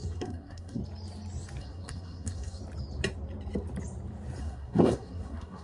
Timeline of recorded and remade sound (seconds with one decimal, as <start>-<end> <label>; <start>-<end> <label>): 0.0-0.8 remade; 0.8-1.6 recorded; 1.6-2.6 remade; 2.6-4.4 recorded; 4.4-5.6 remade